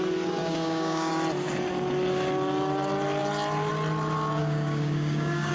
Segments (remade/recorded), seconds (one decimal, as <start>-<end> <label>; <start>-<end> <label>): 0.0-0.4 recorded; 0.4-1.1 remade; 1.1-4.4 recorded; 4.4-5.5 remade